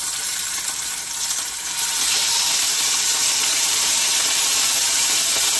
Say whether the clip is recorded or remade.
remade